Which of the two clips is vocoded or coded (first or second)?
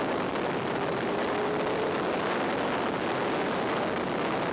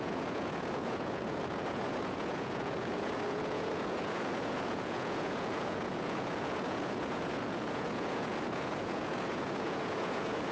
second